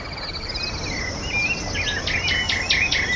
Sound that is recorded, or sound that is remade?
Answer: recorded